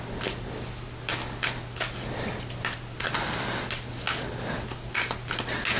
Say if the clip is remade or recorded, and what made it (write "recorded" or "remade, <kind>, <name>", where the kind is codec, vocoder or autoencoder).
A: recorded